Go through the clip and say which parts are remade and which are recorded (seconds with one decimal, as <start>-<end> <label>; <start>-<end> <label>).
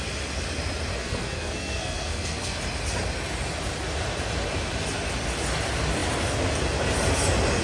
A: 0.0-0.9 recorded; 0.9-2.6 remade; 2.6-7.6 recorded